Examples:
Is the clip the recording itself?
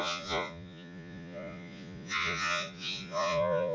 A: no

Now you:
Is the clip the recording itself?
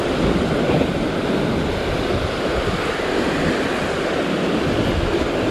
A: yes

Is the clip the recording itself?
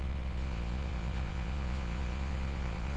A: no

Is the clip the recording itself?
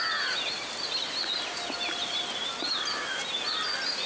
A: yes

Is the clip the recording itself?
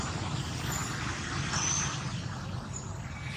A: yes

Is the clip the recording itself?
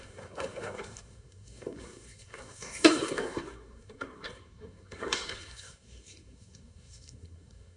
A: no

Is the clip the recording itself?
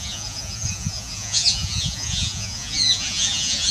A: no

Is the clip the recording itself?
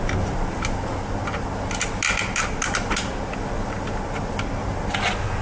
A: yes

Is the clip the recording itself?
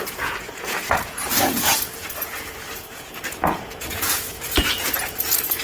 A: no